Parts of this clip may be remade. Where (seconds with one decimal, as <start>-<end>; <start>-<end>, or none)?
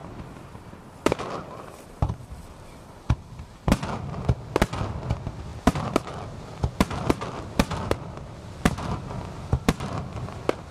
0.0-3.9; 5.5-9.1